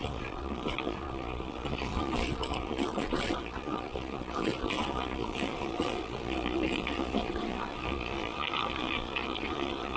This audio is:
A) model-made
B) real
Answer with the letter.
A